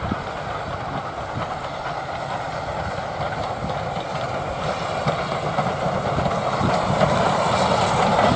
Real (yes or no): yes